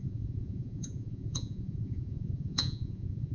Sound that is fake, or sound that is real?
fake